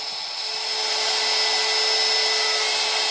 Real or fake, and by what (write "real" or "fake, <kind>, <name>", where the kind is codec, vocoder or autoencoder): real